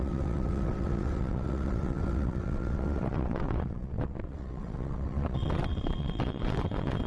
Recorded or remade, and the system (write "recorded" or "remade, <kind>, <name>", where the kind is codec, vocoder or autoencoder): remade, vocoder, WaveNeXt